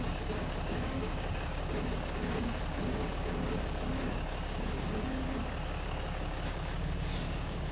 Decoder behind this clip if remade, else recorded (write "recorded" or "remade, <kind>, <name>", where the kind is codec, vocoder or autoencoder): remade, codec, DAC